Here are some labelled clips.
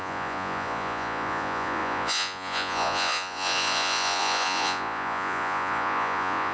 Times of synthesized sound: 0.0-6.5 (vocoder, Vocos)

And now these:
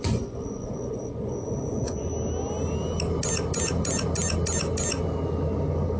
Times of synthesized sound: 0.0-2.1 (vocoder, Vocos)

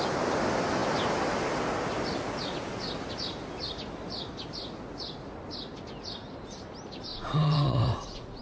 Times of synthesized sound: 7.1-8.4 (vocoder, Vocos)